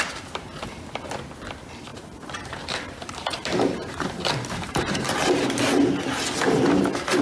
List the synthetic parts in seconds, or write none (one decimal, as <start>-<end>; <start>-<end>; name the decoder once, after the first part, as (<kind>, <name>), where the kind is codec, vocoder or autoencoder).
1.9-5.6 (vocoder, BigVGAN v2)

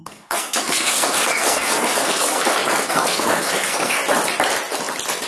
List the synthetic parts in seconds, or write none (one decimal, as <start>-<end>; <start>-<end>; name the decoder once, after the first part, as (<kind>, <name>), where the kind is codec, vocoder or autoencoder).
0.0-4.0 (codec, SNAC)

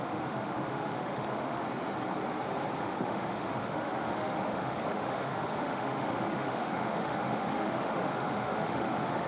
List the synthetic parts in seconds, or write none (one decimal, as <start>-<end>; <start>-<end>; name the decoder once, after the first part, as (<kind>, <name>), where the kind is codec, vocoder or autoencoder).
0.0-1.6 (autoencoder, DAC-VAE); 2.8-9.3

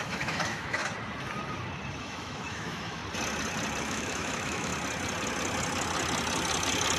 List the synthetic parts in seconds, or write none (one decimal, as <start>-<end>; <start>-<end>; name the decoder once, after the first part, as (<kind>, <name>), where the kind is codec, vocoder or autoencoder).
0.0-0.8 (autoencoder, DAC-VAE); 2.0-3.0; 3.8-4.7